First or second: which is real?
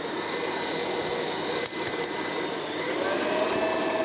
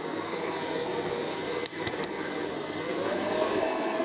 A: first